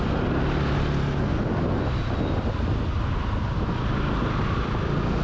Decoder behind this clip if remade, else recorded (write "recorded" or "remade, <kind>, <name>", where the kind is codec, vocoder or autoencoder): recorded